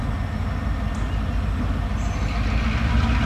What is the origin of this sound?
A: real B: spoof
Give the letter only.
A